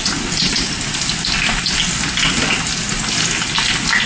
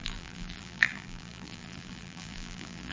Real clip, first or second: first